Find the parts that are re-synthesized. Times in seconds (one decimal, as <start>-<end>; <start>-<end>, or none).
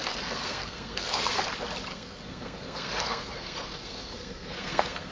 0.0-1.4; 1.9-5.1